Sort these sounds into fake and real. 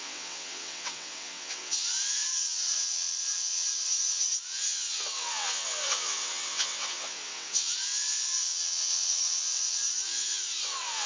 fake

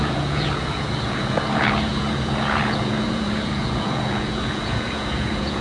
fake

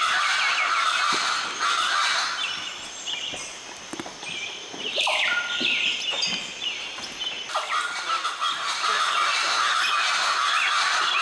real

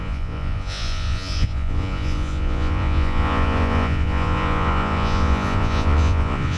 fake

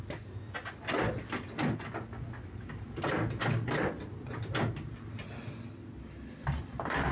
real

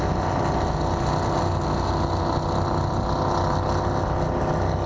real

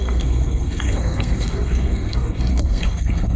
fake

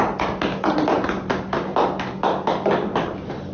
real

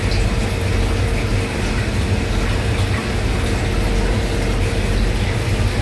real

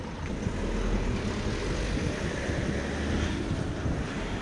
real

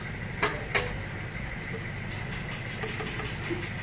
real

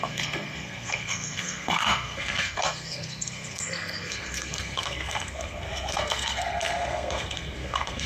fake